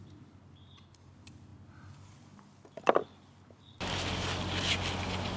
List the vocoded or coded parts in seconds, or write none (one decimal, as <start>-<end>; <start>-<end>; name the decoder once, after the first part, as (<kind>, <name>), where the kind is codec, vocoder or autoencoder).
none